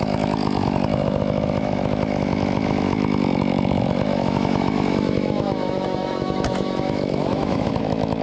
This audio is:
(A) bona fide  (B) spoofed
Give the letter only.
B